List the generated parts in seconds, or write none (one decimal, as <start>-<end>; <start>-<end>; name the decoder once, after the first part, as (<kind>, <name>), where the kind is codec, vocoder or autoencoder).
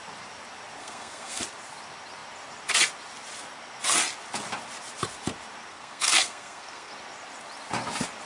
0.8-1.4 (codec, SNAC); 5.7-6.9